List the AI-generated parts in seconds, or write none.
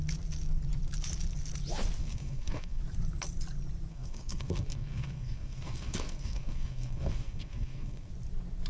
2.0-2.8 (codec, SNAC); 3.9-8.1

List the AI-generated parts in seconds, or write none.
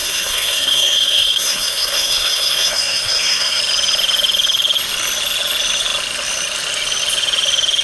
0.0-3.6 (codec, SNAC)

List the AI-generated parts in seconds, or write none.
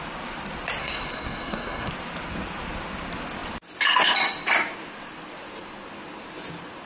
0.8-1.9 (codec, SNAC)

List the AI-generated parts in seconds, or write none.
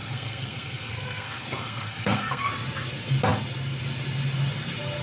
0.0-2.5 (codec, SNAC)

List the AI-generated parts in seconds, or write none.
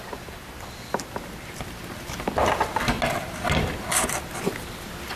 none